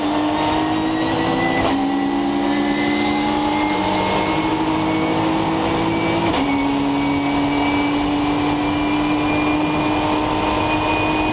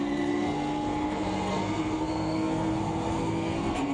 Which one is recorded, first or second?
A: first